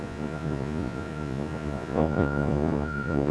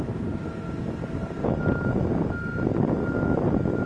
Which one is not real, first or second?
first